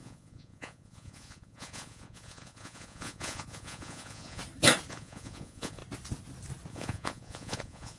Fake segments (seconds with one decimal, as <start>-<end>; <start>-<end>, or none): 0.0-4.4; 4.9-5.8; 6.7-8.0